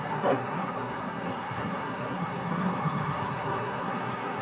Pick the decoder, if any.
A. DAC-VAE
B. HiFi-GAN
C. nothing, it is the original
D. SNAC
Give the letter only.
D